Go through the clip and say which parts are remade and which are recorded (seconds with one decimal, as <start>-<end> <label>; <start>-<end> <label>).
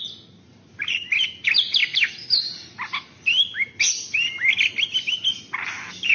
0.0-6.1 recorded